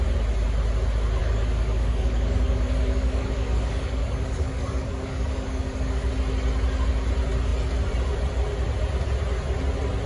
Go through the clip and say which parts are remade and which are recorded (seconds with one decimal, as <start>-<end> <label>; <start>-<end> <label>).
0.0-1.2 recorded; 1.2-6.1 remade; 6.1-10.1 recorded